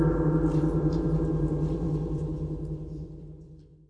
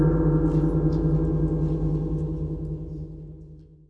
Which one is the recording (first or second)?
second